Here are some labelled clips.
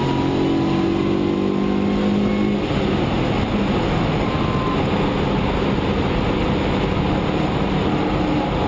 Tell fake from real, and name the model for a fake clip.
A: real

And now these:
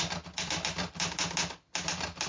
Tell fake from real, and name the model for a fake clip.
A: real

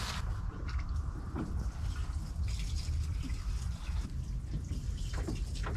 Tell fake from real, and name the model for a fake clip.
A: real